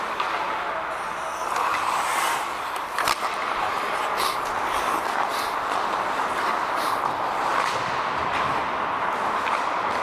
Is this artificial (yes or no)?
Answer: no